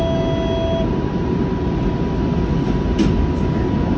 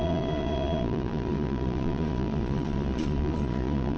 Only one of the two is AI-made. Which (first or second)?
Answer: second